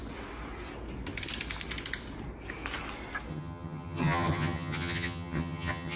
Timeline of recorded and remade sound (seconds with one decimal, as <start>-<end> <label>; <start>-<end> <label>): 0.0-3.3 recorded; 3.3-6.0 remade